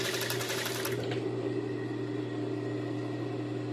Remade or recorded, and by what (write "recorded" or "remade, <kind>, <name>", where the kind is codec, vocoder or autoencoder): recorded